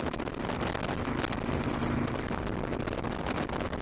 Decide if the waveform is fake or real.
real